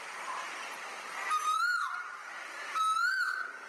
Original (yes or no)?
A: no